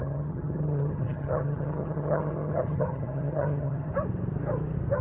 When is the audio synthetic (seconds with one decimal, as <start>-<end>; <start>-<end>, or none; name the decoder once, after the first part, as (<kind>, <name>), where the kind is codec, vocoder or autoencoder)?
0.0-3.9 (vocoder, HiFi-GAN)